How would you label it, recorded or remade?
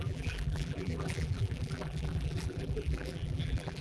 remade